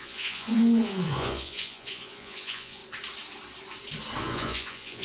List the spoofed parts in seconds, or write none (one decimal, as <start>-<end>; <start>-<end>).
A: 0.0-2.8; 4.2-5.0